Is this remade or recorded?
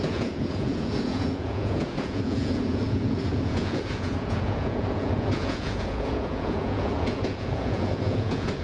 remade